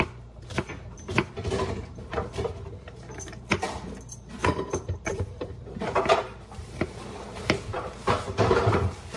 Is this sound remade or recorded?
remade